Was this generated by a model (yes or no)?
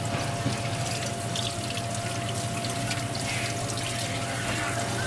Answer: no